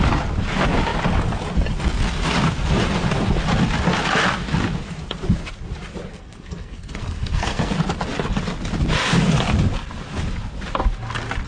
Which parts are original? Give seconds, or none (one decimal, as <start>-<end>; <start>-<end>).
0.0-6.1; 7.7-11.5